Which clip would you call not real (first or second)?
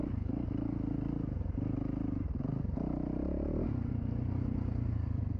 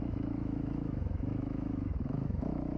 second